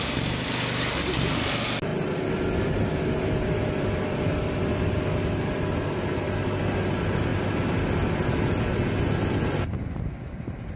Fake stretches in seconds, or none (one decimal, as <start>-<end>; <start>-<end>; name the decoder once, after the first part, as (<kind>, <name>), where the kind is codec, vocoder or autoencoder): none